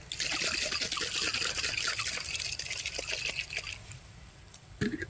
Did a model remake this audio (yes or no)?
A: no